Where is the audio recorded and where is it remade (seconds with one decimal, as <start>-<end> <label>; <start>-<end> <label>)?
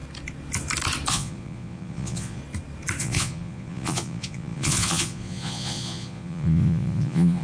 0.0-1.1 recorded; 1.1-2.4 remade; 2.4-3.0 recorded; 3.0-7.4 remade